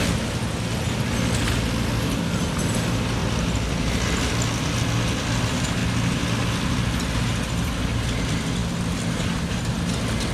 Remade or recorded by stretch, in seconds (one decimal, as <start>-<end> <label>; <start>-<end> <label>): 0.0-10.3 recorded